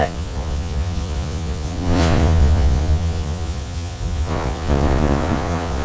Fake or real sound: fake